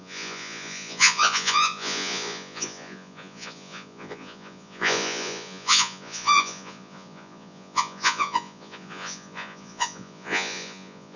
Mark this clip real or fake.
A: fake